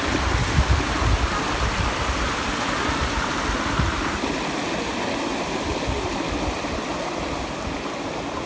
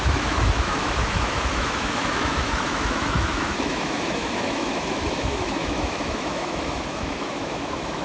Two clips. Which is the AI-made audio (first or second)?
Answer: second